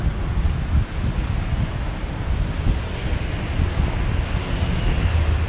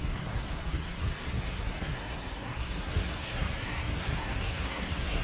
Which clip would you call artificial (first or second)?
second